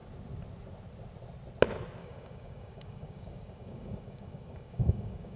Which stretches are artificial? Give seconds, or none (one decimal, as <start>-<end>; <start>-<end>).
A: 2.0-5.4